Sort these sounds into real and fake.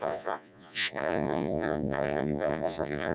fake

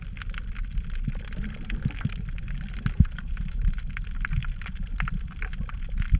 real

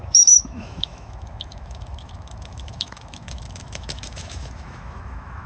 fake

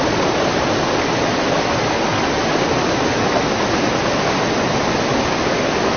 real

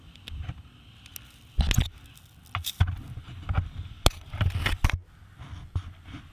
real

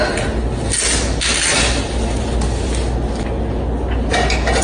real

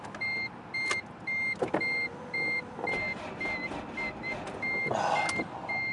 real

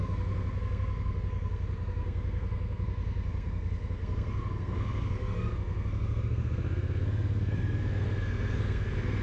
fake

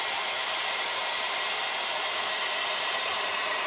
fake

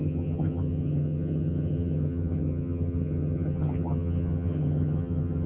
fake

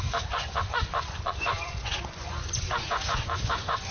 fake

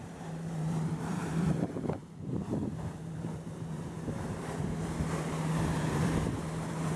fake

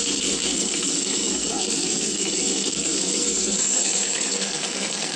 fake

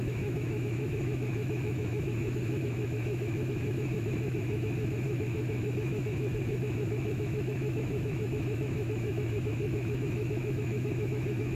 fake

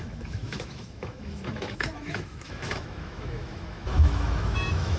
fake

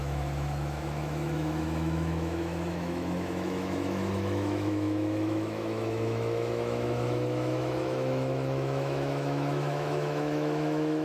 fake